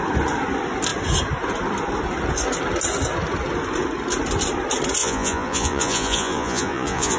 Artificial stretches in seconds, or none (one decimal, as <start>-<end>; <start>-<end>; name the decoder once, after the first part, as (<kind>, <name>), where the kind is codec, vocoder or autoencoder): 5.0-7.2 (vocoder, Vocos)